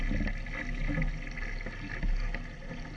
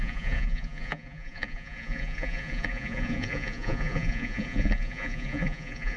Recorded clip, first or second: first